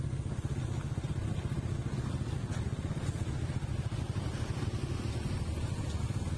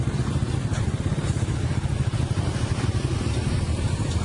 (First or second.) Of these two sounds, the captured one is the first